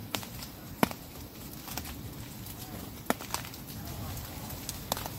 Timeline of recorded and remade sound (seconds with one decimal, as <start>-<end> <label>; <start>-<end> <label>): 0.0-1.8 remade; 1.8-5.2 recorded